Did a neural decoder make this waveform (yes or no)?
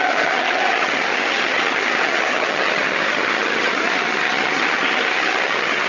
yes